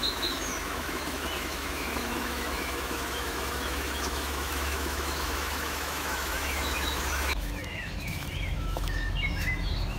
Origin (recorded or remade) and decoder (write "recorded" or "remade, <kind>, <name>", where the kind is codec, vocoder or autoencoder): remade, autoencoder, DAC-VAE